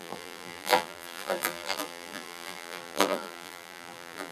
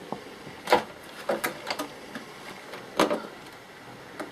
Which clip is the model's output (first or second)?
first